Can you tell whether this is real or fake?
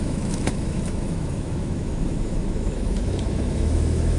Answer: fake